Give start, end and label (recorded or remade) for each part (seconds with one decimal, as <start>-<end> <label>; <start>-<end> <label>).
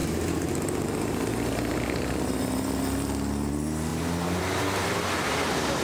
0.0-5.8 recorded